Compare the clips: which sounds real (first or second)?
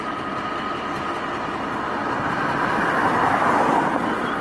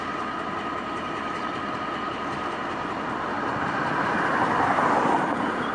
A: first